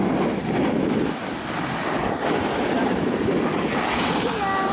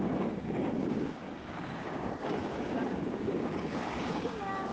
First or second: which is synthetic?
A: second